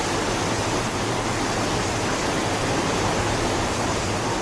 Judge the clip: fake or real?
real